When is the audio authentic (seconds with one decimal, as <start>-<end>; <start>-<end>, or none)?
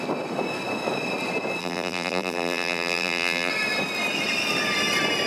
0.0-1.6; 3.5-5.3